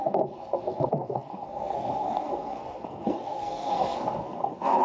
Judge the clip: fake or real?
fake